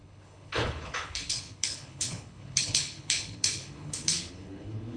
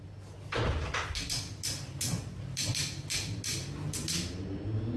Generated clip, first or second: first